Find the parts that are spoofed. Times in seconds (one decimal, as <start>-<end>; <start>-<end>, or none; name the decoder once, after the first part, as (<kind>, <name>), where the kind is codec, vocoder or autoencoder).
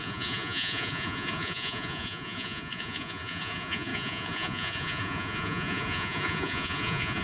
0.0-7.2 (vocoder, Vocos)